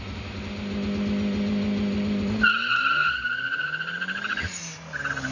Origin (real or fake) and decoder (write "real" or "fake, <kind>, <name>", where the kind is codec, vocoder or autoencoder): real